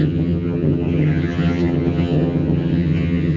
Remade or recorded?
remade